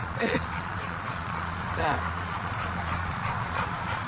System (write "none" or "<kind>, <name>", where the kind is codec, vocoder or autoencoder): vocoder, Vocos